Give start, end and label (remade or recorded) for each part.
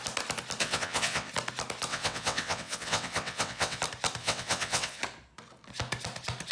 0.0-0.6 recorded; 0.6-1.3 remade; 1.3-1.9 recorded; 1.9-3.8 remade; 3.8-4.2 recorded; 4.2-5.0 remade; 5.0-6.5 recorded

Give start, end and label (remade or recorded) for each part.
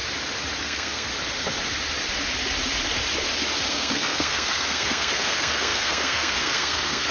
0.0-0.6 recorded; 0.6-1.1 remade; 1.1-3.7 recorded; 3.7-7.1 remade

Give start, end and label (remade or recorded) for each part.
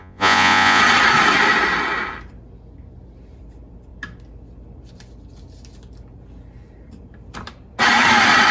0.0-0.8 remade; 0.8-8.5 recorded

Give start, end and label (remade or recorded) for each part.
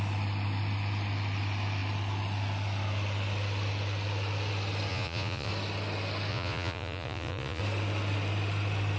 0.0-4.9 recorded; 4.9-5.5 remade; 5.5-6.3 recorded; 6.3-7.6 remade; 7.6-9.0 recorded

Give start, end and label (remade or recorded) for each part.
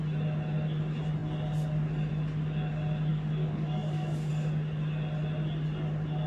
0.0-3.1 recorded; 3.1-4.3 remade; 4.3-6.3 recorded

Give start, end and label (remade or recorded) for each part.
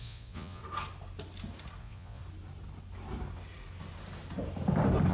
0.0-0.6 remade; 0.6-1.8 recorded; 1.8-2.2 remade; 2.2-5.1 recorded